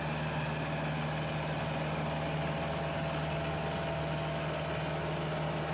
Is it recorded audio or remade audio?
recorded